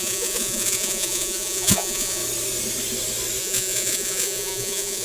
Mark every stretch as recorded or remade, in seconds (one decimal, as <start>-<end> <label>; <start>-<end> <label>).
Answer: 0.0-2.2 remade; 2.2-3.4 recorded; 3.4-5.0 remade